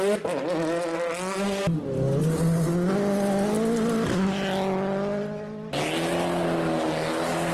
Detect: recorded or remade recorded